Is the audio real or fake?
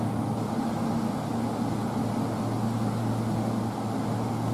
real